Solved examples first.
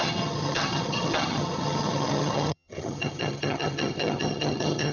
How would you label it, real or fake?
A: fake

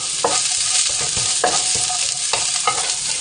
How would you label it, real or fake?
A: real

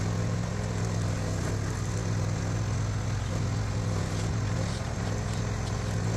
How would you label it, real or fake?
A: real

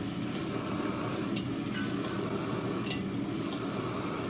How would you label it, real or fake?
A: real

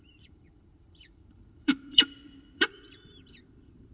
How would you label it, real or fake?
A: fake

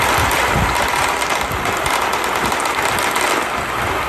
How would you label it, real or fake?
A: real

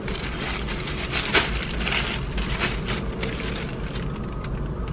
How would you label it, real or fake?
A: real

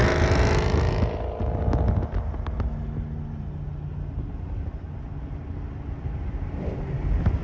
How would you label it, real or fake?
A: real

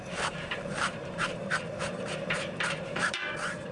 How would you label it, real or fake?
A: fake